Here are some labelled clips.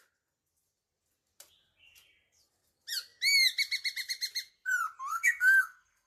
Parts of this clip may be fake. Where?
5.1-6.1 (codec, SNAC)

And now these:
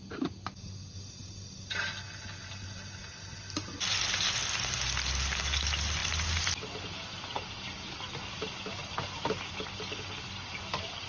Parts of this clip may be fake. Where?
none

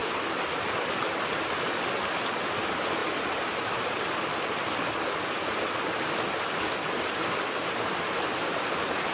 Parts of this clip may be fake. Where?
none

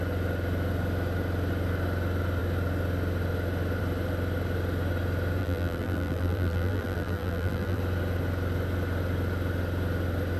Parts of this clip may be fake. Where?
5.4-7.8 (vocoder, BigVGAN v2)